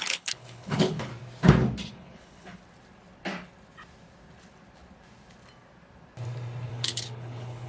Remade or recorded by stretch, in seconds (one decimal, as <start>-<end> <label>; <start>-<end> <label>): 0.0-1.1 remade; 1.1-1.9 recorded; 1.9-2.6 remade; 2.6-6.7 recorded; 6.7-7.7 remade